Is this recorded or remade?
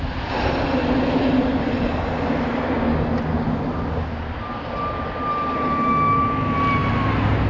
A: recorded